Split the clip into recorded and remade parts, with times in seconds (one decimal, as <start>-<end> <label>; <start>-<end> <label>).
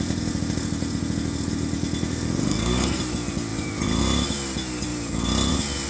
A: 0.0-2.4 recorded; 2.4-3.0 remade; 3.0-5.9 recorded